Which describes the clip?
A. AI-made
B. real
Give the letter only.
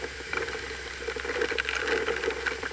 A